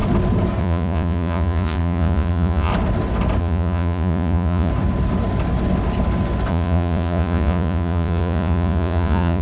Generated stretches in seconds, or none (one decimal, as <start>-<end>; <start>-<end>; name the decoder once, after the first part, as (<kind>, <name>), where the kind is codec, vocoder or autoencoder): 0.6-2.7 (vocoder, Vocos); 3.4-4.7; 6.5-9.4